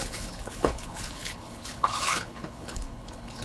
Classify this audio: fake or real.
fake